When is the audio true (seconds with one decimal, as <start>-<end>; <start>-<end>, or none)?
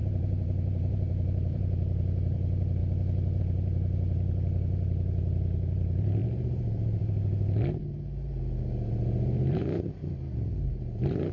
2.8-3.4